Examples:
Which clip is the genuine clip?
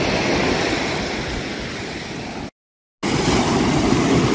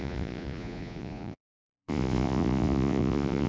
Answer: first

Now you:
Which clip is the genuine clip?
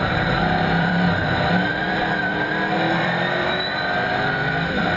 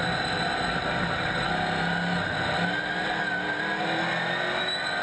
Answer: second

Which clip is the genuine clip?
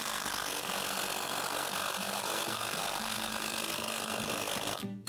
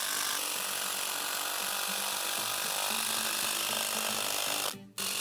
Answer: second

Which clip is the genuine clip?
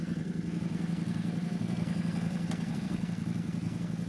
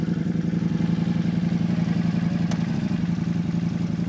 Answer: second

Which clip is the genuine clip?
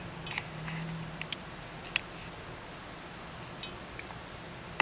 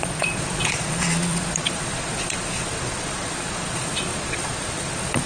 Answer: first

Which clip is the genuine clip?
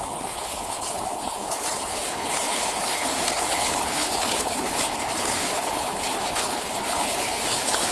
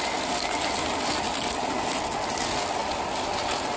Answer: second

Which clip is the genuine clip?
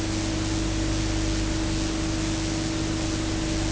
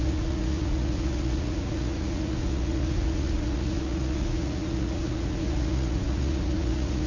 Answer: first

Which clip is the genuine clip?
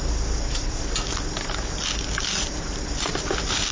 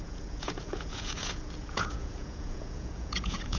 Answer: first